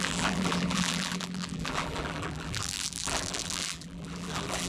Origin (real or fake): fake